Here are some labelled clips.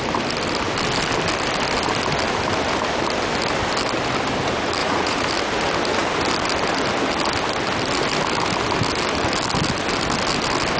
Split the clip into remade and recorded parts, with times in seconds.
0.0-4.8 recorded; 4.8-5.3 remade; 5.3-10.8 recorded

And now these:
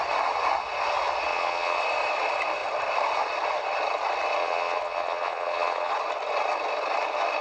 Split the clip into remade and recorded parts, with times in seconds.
0.0-1.3 recorded; 1.3-1.8 remade; 1.8-4.4 recorded; 4.4-5.9 remade; 5.9-7.4 recorded

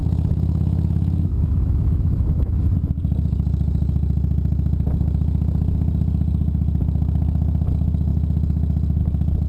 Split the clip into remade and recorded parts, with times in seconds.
0.0-2.7 remade; 2.7-9.5 recorded